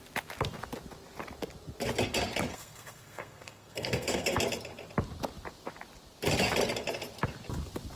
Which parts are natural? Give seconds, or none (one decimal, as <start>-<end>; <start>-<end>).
0.0-2.5; 4.4-8.0